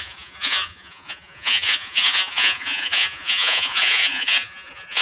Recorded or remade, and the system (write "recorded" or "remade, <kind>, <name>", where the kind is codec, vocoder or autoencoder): remade, vocoder, Vocos